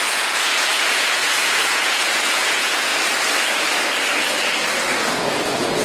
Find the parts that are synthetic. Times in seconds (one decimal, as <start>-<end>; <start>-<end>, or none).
0.0-2.9; 5.0-5.8